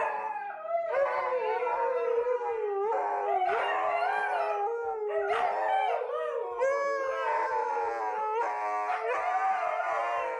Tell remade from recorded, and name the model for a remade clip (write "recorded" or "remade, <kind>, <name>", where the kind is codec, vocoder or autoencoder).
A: recorded